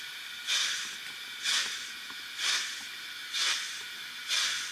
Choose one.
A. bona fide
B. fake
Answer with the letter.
A